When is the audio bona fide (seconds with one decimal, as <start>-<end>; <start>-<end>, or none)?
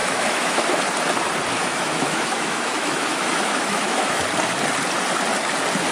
0.8-1.6; 4.2-5.9